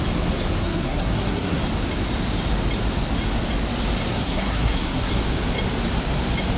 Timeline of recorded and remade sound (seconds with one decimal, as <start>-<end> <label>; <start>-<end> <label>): 0.0-0.6 recorded; 0.6-1.6 remade; 1.6-4.1 recorded; 4.1-5.1 remade; 5.1-6.6 recorded